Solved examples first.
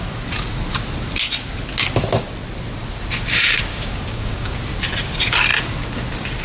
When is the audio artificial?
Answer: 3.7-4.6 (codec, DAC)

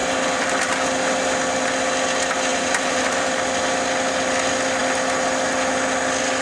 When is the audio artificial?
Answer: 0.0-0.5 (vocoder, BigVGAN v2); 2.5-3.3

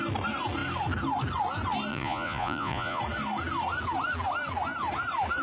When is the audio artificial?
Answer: 1.9-3.0 (vocoder, Vocos)

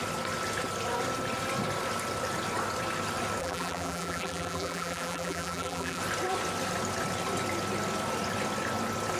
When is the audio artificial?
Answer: 3.4-6.0 (vocoder, BigVGAN v2)

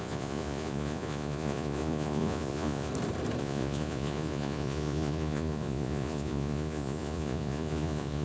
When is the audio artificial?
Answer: 0.0-2.9 (vocoder, Vocos); 3.4-8.2

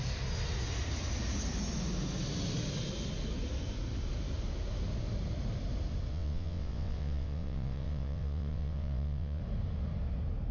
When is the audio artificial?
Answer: 6.1-9.4 (vocoder, WaveNeXt)